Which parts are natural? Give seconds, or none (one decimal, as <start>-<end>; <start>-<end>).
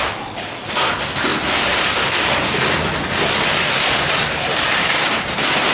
0.0-4.8; 5.3-5.7